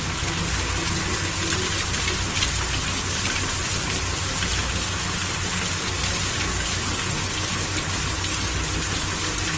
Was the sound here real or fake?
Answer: real